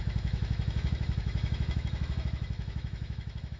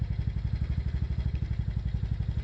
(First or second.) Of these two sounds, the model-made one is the first